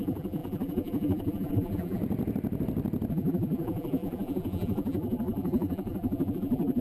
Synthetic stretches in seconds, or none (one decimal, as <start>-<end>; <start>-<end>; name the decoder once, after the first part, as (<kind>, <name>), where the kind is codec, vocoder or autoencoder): 0.0-2.0 (vocoder, BigVGAN v2); 3.1-6.8